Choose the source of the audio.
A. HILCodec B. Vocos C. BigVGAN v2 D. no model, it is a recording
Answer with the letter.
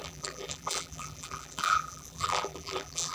C